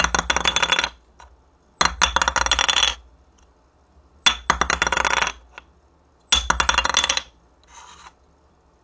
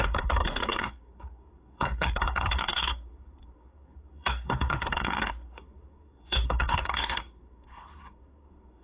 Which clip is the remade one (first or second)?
second